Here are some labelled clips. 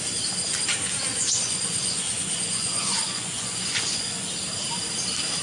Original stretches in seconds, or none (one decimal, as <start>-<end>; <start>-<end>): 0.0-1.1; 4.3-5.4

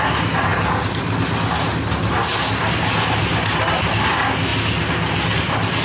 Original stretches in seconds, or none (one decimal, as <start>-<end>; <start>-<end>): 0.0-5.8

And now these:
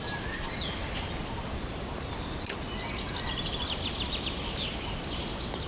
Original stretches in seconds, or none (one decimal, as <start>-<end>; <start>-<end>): 0.0-5.7

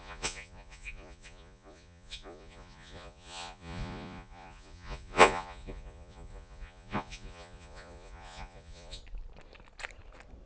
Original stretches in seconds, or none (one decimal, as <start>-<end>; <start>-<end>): 9.0-10.5

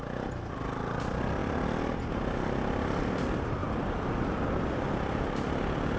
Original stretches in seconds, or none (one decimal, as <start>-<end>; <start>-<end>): 0.0-6.0